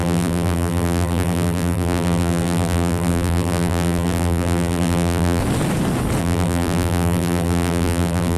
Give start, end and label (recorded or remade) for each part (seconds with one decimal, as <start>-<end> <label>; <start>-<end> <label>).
0.0-5.4 remade; 5.4-6.2 recorded; 6.2-8.4 remade